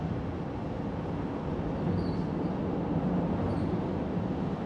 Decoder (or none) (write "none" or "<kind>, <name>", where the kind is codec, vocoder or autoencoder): none